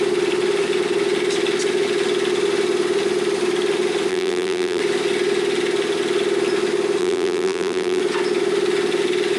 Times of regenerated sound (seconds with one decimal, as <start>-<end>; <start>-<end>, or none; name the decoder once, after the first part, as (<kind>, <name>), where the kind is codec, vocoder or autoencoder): 4.1-4.8 (vocoder, BigVGAN v2); 7.0-8.0

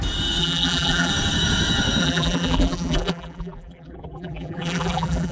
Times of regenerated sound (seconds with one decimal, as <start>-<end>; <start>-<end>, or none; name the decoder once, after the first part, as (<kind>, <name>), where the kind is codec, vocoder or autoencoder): 0.4-1.1 (vocoder, BigVGAN v2); 2.0-5.3

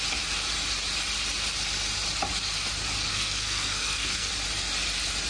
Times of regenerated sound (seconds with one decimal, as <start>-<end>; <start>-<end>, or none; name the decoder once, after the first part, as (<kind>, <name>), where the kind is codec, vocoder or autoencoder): 3.1-4.3 (codec, SNAC)

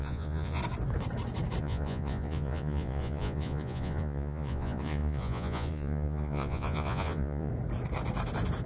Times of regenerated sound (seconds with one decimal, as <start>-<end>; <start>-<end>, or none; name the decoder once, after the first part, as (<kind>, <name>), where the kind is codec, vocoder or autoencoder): 0.0-0.6 (vocoder, Vocos); 1.6-7.5

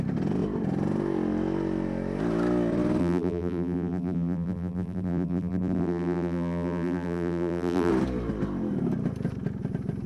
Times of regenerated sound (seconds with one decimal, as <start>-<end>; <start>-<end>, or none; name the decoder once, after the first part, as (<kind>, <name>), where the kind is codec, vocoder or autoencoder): 3.0-7.9 (vocoder, BigVGAN v2)

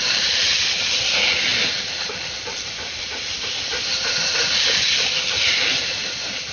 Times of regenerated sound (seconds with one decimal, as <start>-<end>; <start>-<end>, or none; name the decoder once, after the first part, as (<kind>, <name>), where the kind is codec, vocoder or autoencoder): none